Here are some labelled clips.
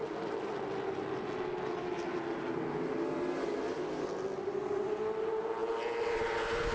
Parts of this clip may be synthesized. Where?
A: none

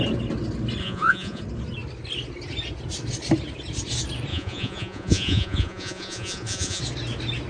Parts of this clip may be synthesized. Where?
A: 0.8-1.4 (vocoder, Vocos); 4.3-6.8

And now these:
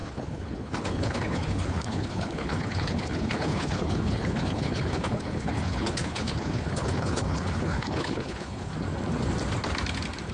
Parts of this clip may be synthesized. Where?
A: 0.0-8.7 (codec, HILCodec)

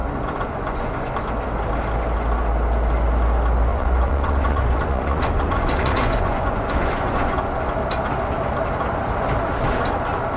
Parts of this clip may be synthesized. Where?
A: 0.0-1.1 (vocoder, Vocos); 3.7-7.6